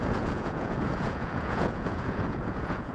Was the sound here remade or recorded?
remade